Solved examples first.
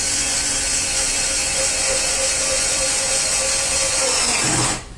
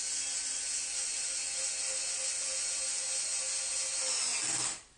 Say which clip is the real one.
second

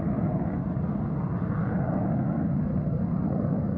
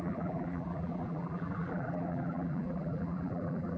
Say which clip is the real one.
first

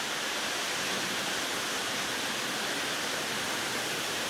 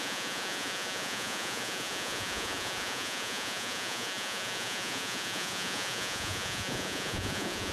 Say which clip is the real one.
first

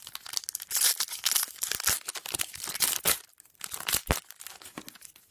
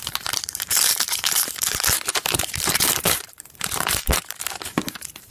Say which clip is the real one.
first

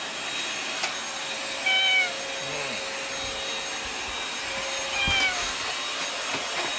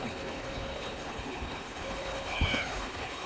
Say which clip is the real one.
first